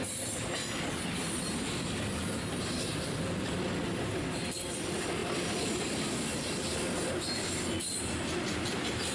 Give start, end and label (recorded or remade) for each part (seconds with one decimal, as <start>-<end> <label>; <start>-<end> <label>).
0.0-5.2 recorded; 5.2-7.4 remade; 7.4-9.1 recorded